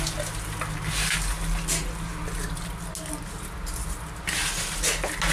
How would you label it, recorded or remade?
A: recorded